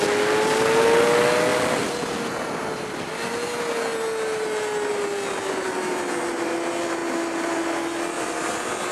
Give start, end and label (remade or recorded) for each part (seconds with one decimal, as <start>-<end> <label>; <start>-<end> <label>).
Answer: 0.0-8.9 recorded